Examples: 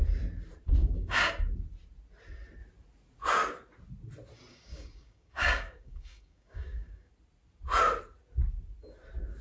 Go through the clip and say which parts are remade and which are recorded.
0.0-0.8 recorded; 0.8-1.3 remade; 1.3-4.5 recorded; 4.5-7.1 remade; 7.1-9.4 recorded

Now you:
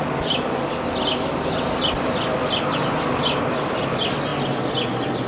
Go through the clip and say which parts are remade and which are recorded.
0.0-5.3 recorded

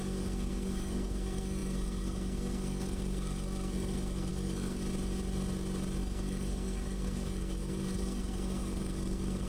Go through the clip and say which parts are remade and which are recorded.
0.0-4.8 remade; 4.8-6.0 recorded; 6.0-9.5 remade

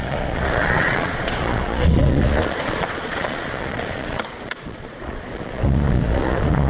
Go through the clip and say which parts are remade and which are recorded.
0.0-6.7 remade

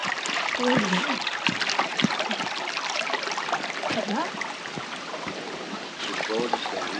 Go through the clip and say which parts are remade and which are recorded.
0.0-7.0 recorded

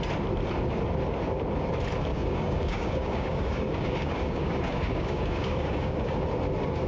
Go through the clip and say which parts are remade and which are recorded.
0.0-2.1 recorded; 2.1-6.2 remade; 6.2-6.9 recorded